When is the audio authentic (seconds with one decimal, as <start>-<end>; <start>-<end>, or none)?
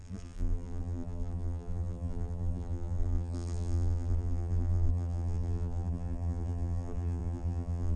none